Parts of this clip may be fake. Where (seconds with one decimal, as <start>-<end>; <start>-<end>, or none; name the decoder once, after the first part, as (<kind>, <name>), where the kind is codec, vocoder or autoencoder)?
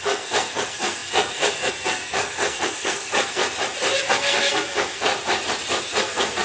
0.0-3.5 (codec, SNAC); 4.0-5.1; 5.8-6.4